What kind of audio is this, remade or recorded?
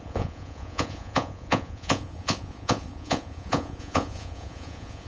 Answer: remade